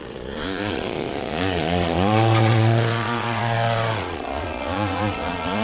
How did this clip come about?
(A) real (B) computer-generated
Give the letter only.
B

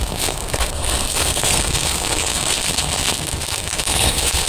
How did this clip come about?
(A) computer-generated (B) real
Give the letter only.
A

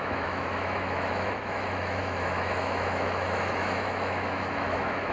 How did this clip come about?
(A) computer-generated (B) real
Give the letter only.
A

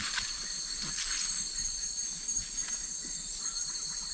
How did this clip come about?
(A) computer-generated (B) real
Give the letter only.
B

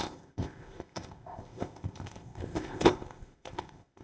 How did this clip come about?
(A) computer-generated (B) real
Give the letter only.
A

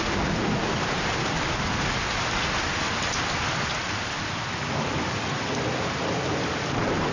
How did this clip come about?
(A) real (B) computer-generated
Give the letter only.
A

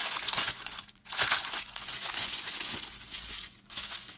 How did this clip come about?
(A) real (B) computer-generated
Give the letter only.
B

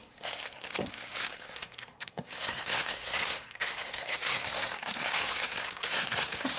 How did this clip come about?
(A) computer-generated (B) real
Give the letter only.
A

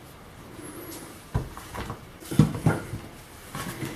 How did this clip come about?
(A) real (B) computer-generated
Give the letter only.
A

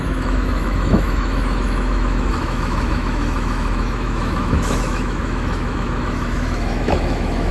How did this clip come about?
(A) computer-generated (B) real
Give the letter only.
A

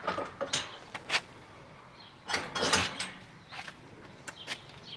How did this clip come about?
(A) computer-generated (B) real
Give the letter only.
B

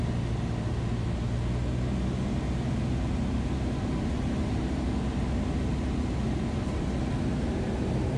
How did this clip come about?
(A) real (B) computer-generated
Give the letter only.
A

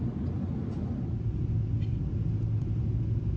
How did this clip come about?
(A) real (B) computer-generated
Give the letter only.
A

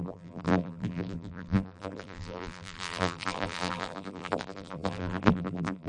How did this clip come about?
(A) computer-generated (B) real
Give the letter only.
A